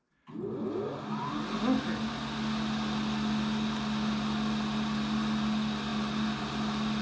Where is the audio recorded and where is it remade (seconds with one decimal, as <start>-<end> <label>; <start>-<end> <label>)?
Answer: 0.0-7.0 recorded

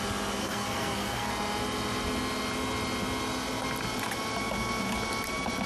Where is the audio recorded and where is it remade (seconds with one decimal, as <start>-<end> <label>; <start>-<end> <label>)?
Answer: 0.0-0.4 recorded; 0.4-1.3 remade; 1.3-5.7 recorded